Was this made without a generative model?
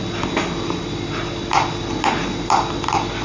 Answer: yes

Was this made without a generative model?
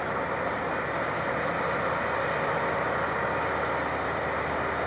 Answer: yes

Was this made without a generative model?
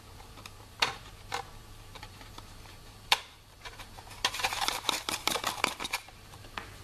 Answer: no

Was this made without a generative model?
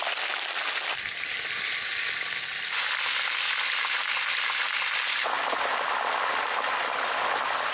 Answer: yes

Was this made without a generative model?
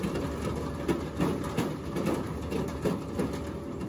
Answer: yes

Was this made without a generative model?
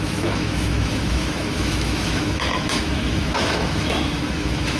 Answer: no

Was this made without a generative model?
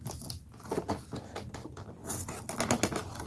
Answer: yes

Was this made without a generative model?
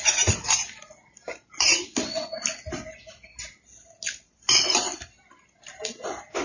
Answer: yes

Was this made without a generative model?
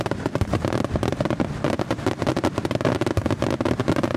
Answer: yes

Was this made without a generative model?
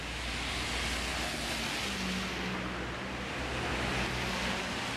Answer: yes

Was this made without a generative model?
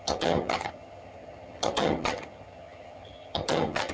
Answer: no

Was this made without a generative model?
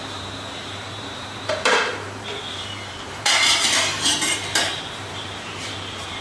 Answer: no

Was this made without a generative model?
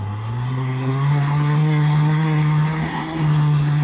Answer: no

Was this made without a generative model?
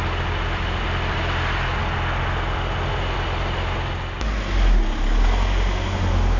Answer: yes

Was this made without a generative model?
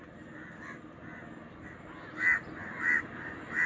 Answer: yes